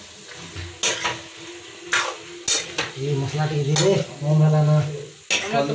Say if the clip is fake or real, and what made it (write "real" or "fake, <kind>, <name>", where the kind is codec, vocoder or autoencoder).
real